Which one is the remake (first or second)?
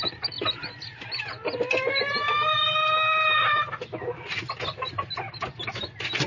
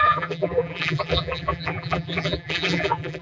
second